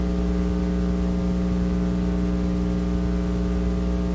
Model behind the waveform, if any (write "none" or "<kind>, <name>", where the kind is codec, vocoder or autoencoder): none